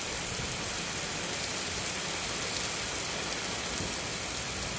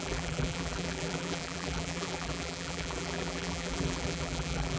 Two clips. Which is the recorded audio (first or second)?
first